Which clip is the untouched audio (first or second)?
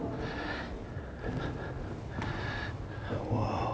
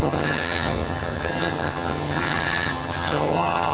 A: first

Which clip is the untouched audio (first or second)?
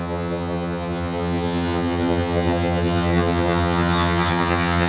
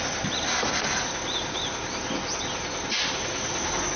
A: second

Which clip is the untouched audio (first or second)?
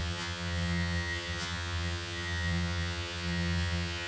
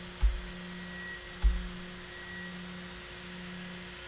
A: second